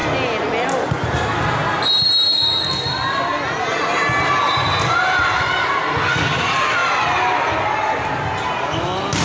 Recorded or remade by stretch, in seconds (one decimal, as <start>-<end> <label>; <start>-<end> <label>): 0.0-9.2 recorded